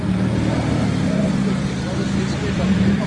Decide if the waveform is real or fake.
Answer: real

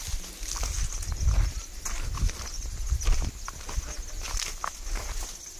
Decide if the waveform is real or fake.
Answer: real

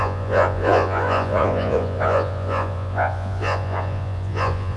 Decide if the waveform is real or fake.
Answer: fake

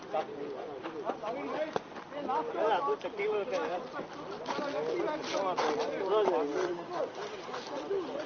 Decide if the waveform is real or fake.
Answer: real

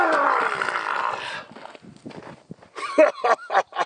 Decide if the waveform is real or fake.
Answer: real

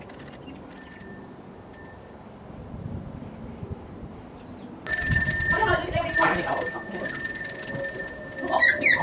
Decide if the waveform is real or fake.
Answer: real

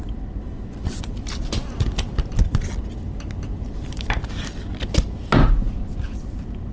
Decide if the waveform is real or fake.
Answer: real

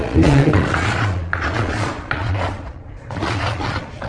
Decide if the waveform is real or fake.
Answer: fake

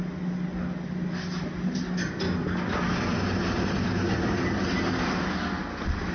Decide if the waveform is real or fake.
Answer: real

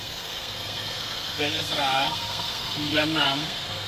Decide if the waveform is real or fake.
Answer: fake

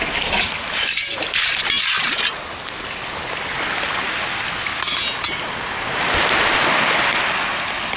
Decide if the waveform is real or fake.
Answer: real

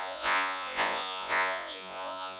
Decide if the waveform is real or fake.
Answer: fake